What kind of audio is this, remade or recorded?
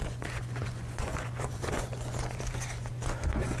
remade